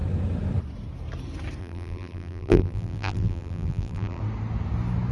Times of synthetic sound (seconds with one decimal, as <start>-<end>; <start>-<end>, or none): 1.6-4.2